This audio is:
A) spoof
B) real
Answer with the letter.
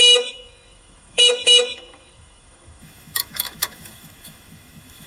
A